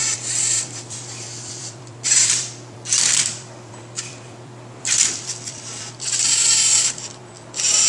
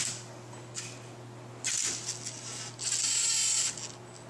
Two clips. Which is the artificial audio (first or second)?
first